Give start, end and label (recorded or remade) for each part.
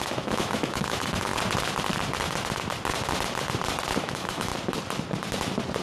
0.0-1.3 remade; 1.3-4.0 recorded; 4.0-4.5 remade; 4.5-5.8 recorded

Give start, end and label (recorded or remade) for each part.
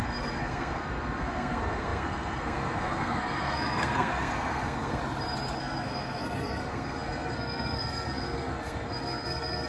0.0-5.0 remade; 5.0-5.6 recorded; 5.6-9.7 remade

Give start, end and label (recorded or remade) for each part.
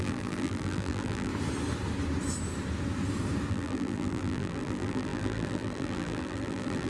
0.0-1.3 remade; 1.3-3.5 recorded; 3.5-6.9 remade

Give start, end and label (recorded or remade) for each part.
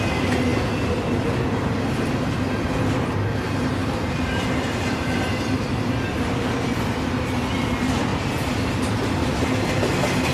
0.0-3.8 recorded; 3.8-5.9 remade; 5.9-8.1 recorded; 8.1-8.7 remade; 8.7-10.3 recorded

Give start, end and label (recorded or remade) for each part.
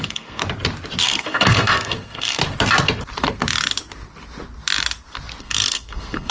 0.0-0.4 remade; 0.4-1.0 recorded; 1.0-2.4 remade; 2.4-5.4 recorded; 5.4-6.3 remade